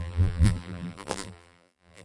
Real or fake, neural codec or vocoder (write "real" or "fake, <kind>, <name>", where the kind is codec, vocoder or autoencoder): fake, vocoder, BigVGAN v2